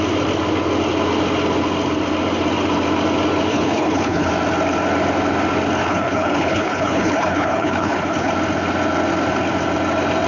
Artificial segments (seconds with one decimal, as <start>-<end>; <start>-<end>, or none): 3.5-4.3; 5.8-8.3

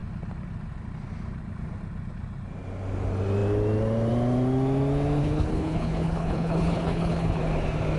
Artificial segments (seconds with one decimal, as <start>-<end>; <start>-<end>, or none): 5.2-7.4

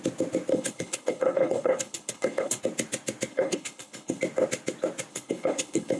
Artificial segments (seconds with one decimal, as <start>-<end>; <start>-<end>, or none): 0.5-2.6; 3.3-4.2; 5.1-6.0

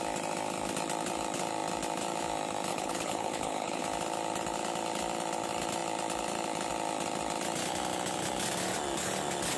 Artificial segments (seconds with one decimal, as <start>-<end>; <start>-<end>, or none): 2.7-3.8